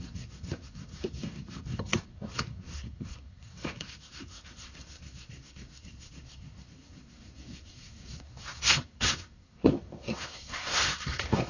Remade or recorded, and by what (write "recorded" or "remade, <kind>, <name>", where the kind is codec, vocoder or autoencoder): remade, codec, SNAC